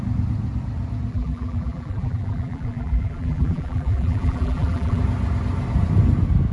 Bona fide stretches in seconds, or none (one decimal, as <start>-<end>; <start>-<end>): 0.0-1.1; 5.0-6.5